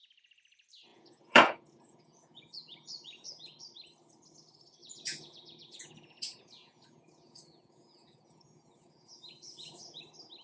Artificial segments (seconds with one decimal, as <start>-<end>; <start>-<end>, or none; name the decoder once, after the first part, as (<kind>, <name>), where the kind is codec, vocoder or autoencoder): 0.9-3.6 (vocoder, Vocos); 4.8-10.0